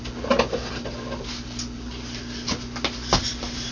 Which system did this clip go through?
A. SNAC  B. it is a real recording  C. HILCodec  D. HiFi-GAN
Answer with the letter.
B